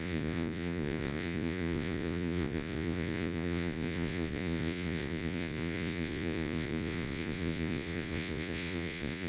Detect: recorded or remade remade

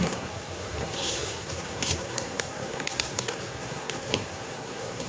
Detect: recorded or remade remade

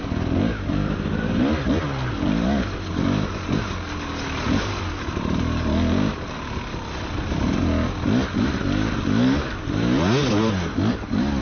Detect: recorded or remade recorded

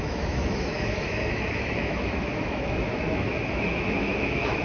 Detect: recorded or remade remade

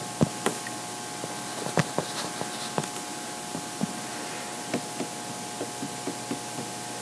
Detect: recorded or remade recorded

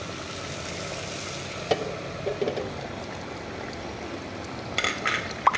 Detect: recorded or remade recorded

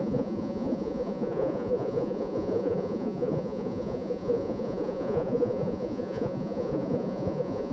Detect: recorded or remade remade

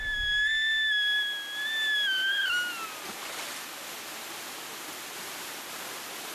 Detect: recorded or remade recorded